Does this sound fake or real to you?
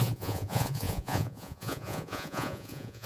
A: fake